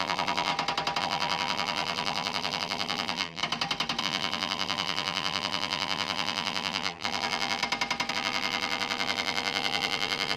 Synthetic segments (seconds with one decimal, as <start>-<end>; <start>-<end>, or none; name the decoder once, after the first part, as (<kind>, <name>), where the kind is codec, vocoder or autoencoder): 0.0-0.5 (vocoder, BigVGAN v2); 1.0-3.4; 4.0-7.6; 8.1-10.4